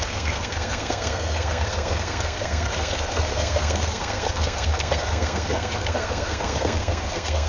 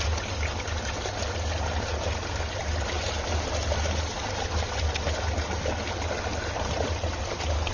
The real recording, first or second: second